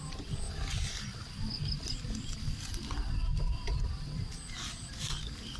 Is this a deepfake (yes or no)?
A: no